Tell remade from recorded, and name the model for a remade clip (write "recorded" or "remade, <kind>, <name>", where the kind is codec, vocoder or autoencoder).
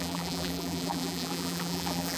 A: remade, vocoder, BigVGAN v2